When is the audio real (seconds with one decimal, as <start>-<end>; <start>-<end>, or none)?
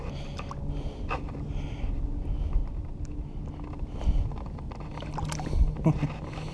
0.0-6.5